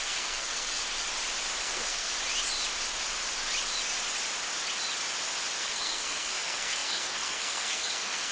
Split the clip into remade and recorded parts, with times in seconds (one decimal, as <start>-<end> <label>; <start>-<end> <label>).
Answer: 0.0-0.8 remade; 0.8-1.6 recorded; 1.6-2.1 remade; 2.1-5.6 recorded; 5.6-8.3 remade